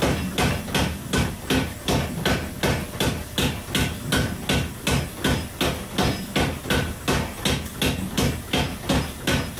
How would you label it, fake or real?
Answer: real